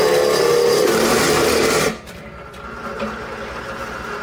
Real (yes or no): yes